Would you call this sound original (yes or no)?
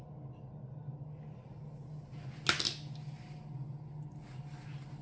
yes